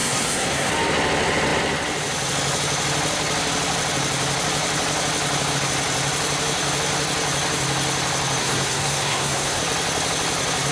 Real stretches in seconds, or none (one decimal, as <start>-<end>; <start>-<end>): 0.7-8.4; 9.6-10.7